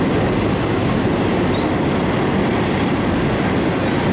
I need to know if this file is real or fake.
real